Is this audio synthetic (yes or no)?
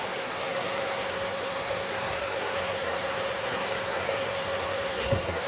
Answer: yes